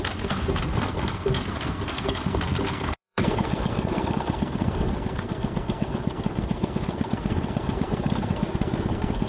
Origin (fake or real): fake